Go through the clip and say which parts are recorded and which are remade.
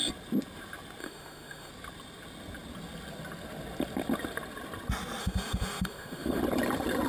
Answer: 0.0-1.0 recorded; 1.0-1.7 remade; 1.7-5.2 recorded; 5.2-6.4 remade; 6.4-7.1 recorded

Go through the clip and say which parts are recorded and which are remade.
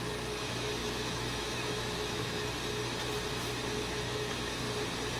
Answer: 0.0-0.8 recorded; 0.8-2.5 remade; 2.5-3.7 recorded; 3.7-4.6 remade; 4.6-5.2 recorded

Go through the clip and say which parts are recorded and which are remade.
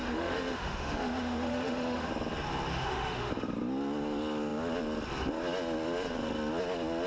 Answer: 0.0-2.1 remade; 2.1-2.7 recorded; 2.7-3.3 remade; 3.3-7.1 recorded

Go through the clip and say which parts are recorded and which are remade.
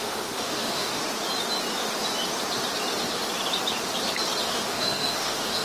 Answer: 0.0-1.0 remade; 1.0-4.4 recorded; 4.4-5.6 remade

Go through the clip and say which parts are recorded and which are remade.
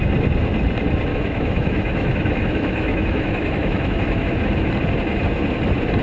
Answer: 0.0-1.1 recorded; 1.1-4.7 remade; 4.7-6.0 recorded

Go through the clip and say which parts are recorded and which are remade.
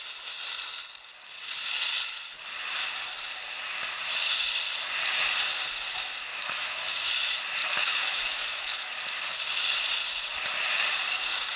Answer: 0.0-6.3 recorded; 6.3-7.1 remade; 7.1-7.6 recorded; 7.6-9.0 remade; 9.0-11.6 recorded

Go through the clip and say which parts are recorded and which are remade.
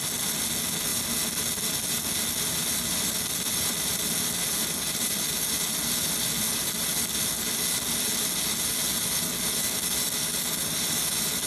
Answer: 0.0-11.5 recorded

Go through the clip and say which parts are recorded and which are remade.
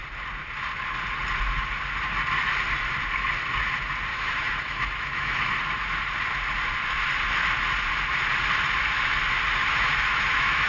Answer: 0.0-4.1 recorded; 4.1-5.5 remade; 5.5-9.6 recorded; 9.6-10.7 remade